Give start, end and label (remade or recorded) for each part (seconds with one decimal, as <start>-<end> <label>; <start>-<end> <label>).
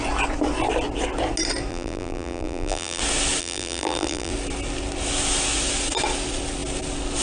0.0-1.7 recorded; 1.7-3.0 remade; 3.0-3.4 recorded; 3.4-4.3 remade; 4.3-7.2 recorded